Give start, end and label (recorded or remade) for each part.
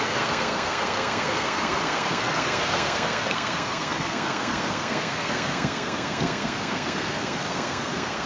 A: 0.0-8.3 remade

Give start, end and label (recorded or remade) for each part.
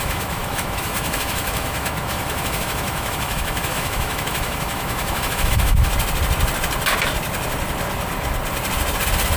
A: 0.0-5.9 remade; 5.9-9.4 recorded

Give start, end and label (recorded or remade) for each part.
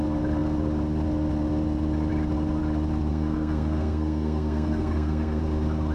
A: 0.0-3.1 recorded; 3.1-5.4 remade; 5.4-5.9 recorded